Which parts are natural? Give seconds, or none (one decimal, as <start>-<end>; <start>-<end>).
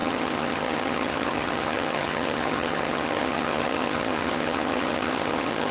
none